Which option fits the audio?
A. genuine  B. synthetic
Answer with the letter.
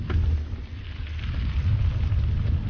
A